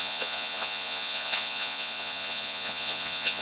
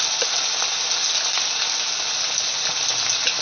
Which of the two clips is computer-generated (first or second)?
first